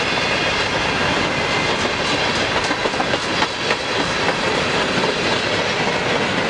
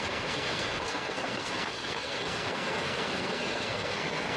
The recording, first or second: first